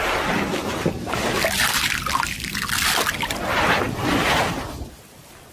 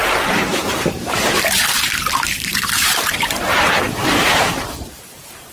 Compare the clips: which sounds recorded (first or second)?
first